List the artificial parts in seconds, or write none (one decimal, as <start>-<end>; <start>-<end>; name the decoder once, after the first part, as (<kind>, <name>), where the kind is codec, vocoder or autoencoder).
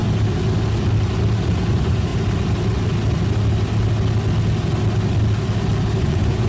1.7-2.1 (vocoder, Vocos); 6.0-6.5